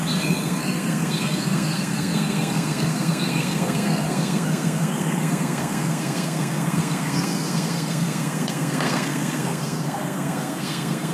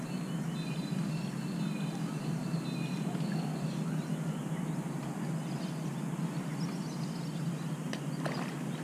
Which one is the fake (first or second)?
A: first